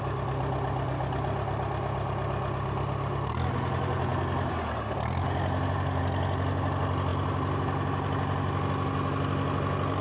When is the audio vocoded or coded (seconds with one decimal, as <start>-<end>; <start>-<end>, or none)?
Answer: none